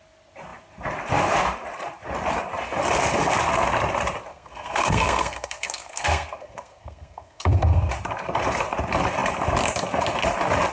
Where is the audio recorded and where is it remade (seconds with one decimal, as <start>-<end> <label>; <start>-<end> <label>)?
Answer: 0.0-4.3 recorded; 4.3-7.9 remade; 7.9-10.7 recorded